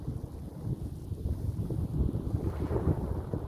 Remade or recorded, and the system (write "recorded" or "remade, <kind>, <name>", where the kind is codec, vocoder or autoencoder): recorded